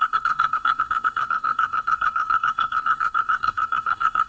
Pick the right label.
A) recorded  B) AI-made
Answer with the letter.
B